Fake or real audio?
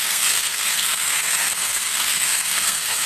fake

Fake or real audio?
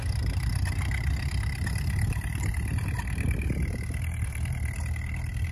real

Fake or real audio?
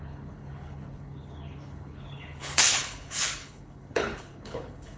fake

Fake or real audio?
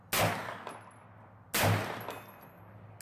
real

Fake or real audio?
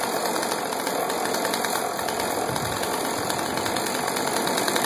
real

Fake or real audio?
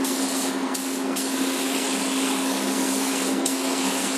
fake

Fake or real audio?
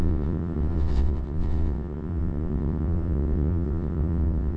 fake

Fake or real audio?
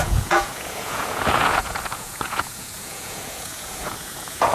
fake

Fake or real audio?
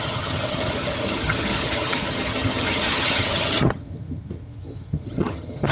fake